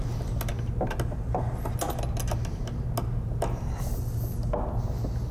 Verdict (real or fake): real